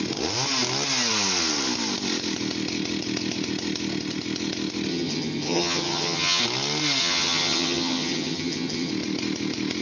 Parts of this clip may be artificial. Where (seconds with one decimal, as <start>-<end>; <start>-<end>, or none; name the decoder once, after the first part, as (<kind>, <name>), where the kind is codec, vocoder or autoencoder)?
4.9-6.4 (vocoder, HiFi-GAN); 7.0-8.9